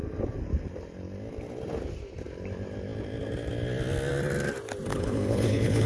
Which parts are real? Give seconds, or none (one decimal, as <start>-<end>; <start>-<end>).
0.0-4.9